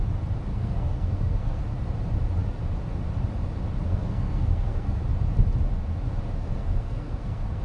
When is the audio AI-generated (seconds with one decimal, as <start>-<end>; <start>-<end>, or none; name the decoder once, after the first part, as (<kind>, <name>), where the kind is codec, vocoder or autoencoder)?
0.5-1.6 (codec, SNAC); 3.8-5.0; 6.4-7.6

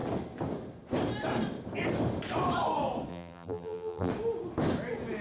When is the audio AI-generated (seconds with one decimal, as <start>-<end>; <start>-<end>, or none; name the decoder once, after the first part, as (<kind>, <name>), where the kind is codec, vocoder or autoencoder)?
3.1-4.1 (vocoder, BigVGAN v2)

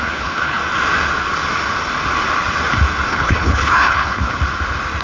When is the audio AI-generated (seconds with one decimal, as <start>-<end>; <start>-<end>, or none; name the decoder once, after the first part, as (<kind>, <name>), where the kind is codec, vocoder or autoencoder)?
0.0-0.6 (codec, HILCodec); 3.1-4.3

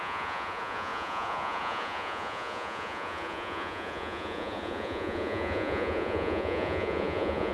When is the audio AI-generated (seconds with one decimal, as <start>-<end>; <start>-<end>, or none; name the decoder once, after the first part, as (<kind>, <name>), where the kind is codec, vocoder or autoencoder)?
0.0-7.5 (vocoder, Vocos)

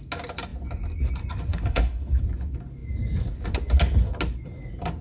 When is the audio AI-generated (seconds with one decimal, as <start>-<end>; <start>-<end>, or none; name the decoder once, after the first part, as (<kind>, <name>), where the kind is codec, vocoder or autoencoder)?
1.5-2.2 (codec, HILCodec)